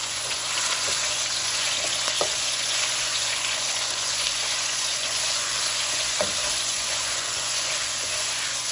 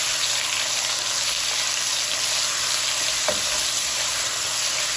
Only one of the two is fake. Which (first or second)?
first